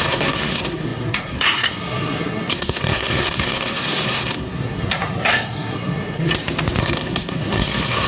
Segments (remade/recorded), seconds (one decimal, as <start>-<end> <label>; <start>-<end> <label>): 0.0-6.3 remade; 6.3-6.8 recorded; 6.8-8.1 remade